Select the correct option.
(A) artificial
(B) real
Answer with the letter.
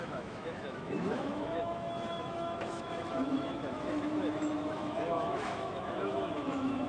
A